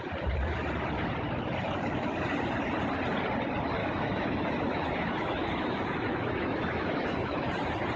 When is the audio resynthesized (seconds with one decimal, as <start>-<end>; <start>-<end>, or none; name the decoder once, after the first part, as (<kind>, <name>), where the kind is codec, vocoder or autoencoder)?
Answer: 3.8-7.5 (autoencoder, DAC-VAE)

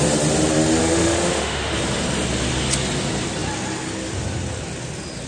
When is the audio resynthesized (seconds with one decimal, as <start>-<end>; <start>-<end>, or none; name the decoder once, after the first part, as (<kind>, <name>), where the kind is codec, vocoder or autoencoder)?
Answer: 0.8-1.7 (autoencoder, DAC-VAE)

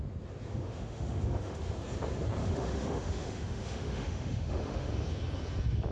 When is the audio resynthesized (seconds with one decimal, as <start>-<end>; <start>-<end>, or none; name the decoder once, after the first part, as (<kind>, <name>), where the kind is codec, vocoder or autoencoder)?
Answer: 0.5-1.7 (autoencoder, DAC-VAE); 2.4-4.9

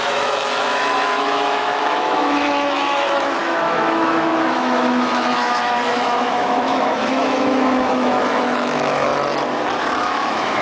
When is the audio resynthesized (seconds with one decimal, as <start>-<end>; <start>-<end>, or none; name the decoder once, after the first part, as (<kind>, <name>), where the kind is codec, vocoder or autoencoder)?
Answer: 0.0-9.1 (autoencoder, DAC-VAE); 9.8-10.6